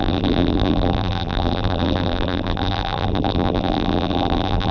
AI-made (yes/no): yes